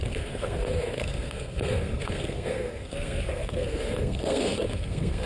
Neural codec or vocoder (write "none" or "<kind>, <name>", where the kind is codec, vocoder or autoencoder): codec, SNAC